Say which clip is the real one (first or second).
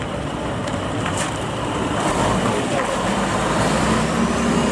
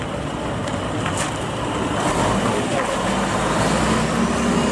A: second